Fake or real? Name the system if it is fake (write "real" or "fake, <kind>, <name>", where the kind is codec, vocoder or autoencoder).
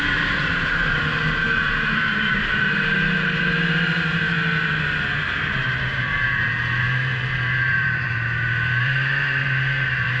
fake, vocoder, BigVGAN v2